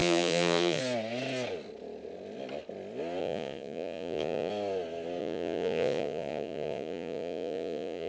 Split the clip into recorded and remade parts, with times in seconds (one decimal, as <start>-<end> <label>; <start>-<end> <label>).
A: 0.0-0.8 remade; 0.8-3.2 recorded; 3.2-4.5 remade; 4.5-5.2 recorded; 5.2-8.1 remade